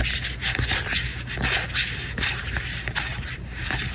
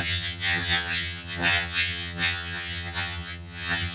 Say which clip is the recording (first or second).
first